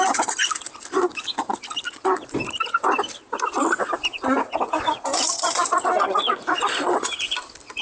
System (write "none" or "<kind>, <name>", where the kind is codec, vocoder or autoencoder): none